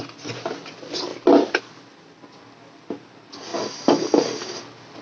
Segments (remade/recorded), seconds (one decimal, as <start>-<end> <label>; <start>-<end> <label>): 0.0-5.0 recorded